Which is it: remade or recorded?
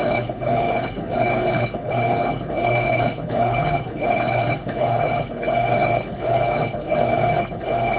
remade